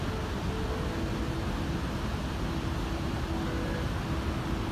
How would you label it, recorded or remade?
recorded